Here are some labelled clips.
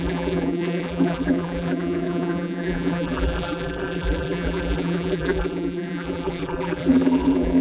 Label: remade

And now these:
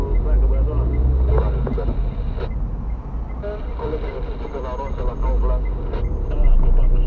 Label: recorded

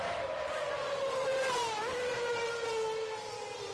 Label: recorded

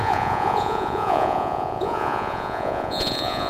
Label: remade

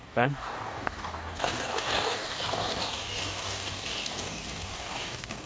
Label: remade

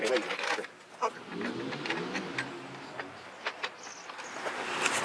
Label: recorded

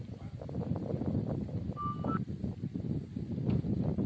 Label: recorded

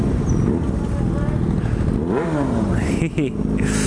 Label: recorded